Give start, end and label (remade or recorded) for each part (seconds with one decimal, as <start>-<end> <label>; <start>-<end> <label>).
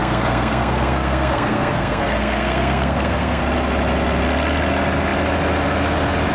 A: 0.0-3.4 remade; 3.4-6.3 recorded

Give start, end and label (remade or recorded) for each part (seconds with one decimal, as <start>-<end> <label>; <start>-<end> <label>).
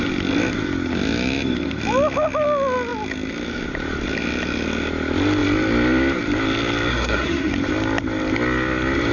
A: 0.0-6.9 recorded; 6.9-7.5 remade; 7.5-9.1 recorded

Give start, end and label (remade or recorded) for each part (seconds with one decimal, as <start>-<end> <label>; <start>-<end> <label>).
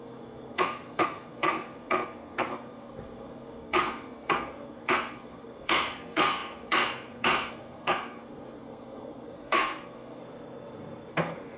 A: 0.0-10.2 remade; 10.2-11.1 recorded; 11.1-11.6 remade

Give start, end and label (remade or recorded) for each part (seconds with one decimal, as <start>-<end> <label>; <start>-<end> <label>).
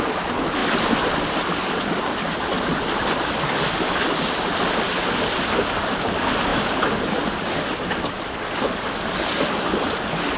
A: 0.0-10.4 recorded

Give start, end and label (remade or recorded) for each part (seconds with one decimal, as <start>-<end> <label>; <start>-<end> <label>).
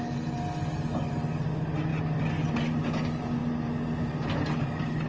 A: 0.0-5.1 recorded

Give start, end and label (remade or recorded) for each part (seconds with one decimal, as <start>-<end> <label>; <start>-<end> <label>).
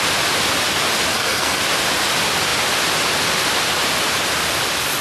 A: 0.0-1.1 recorded; 1.1-1.6 remade; 1.6-5.0 recorded